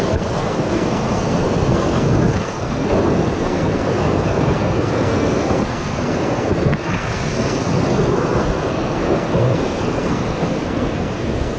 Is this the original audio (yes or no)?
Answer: no